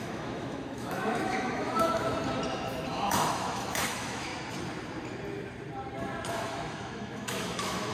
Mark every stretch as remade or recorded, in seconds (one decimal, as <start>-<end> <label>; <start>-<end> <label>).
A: 0.0-2.1 remade; 2.1-2.9 recorded; 2.9-4.3 remade; 4.3-6.3 recorded; 6.3-7.9 remade